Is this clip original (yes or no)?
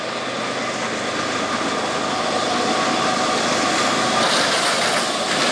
yes